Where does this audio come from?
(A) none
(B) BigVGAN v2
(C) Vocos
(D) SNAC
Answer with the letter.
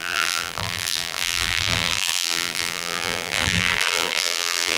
B